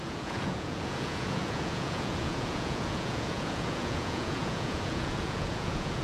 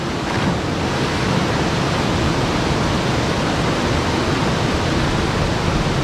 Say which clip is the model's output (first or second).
first